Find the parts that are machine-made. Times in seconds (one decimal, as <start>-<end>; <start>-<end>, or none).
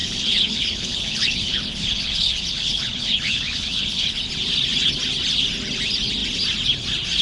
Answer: 0.0-4.3